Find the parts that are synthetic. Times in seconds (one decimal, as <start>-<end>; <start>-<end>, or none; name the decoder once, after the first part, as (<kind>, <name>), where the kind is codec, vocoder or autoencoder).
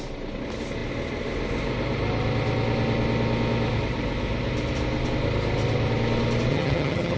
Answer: 6.5-7.2 (vocoder, HiFi-GAN)